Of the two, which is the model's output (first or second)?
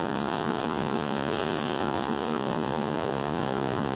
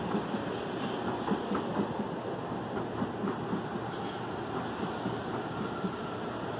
first